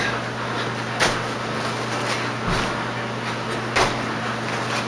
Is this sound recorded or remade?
recorded